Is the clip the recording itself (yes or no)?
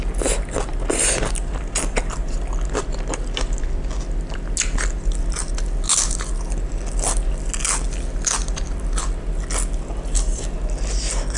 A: yes